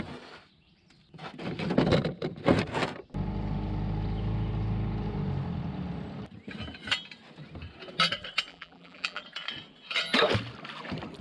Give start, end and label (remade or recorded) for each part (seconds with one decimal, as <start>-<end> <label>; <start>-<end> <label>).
0.0-8.5 recorded; 8.5-9.2 remade; 9.2-11.2 recorded